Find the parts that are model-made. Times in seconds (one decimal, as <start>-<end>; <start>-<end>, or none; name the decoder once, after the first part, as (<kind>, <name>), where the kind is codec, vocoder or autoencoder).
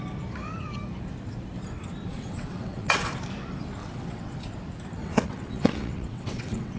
2.1-3.1 (vocoder, WaveNeXt); 3.8-4.3; 5.0-6.8